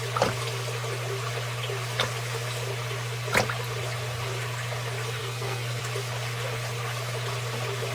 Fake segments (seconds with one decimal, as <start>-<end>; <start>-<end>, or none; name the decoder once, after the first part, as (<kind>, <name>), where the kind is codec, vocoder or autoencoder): 5.2-5.8 (codec, SNAC)